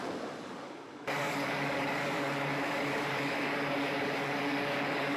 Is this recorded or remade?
remade